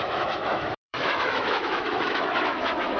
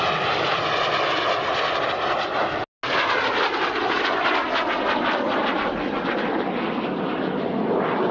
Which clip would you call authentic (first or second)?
second